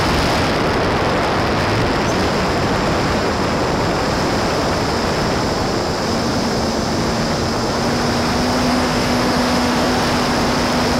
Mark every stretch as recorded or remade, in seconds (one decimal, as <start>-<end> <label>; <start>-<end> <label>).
0.0-8.7 recorded; 8.7-9.9 remade; 9.9-11.0 recorded